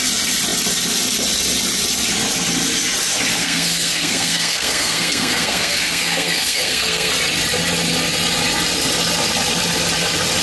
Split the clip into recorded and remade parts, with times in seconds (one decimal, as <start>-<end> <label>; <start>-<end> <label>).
0.0-3.4 recorded; 3.4-7.1 remade; 7.1-10.4 recorded